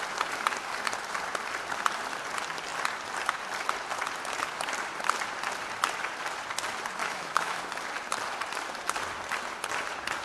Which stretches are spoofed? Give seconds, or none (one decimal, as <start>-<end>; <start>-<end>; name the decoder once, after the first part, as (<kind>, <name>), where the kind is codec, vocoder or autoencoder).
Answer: 7.0-7.6 (autoencoder, DAC-VAE)